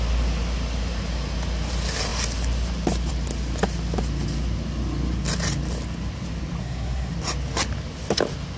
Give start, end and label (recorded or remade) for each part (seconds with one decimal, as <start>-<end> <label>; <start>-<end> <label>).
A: 0.0-6.6 recorded; 6.6-7.1 remade; 7.1-8.6 recorded